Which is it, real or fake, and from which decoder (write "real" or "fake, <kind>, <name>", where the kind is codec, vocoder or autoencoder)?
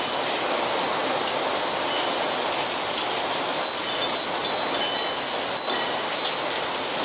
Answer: real